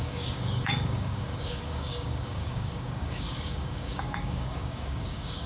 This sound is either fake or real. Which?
fake